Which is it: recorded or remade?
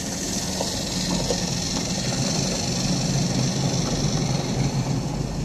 recorded